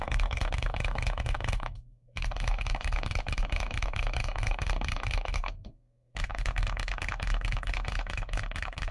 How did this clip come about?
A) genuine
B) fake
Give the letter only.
B